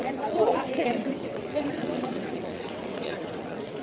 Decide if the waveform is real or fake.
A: fake